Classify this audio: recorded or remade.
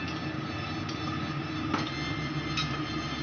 recorded